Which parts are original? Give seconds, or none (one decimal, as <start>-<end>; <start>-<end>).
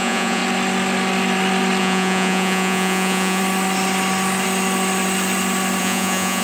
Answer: 0.4-1.8; 3.4-5.8